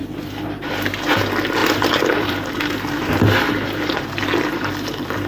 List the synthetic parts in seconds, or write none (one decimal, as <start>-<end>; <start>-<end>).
0.0-0.7; 1.6-4.7